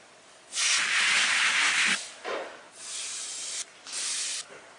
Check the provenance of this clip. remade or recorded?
recorded